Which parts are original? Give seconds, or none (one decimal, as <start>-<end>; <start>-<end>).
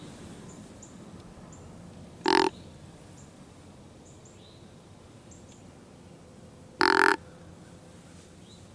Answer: 0.0-8.7